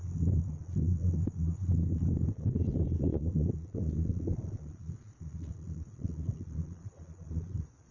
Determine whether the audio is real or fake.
fake